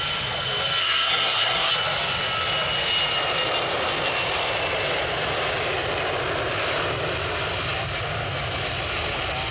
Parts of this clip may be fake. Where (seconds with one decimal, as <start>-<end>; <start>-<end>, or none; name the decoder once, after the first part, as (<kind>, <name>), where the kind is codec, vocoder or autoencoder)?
0.8-1.7 (codec, SNAC)